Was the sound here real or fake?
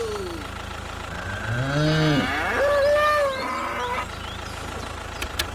real